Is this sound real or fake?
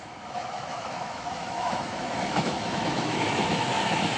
fake